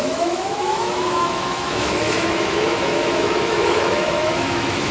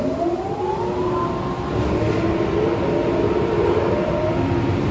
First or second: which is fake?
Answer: first